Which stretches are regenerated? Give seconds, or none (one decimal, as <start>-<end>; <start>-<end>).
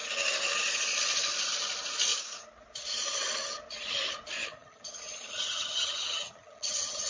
4.4-7.1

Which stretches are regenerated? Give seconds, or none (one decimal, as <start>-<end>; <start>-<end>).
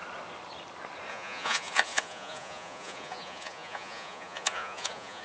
1.1-5.2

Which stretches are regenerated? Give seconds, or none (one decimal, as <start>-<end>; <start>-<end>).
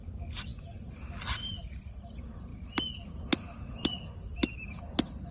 0.0-2.5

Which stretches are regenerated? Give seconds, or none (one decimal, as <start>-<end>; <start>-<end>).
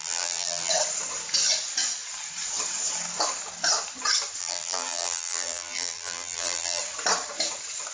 0.0-0.7; 4.4-6.8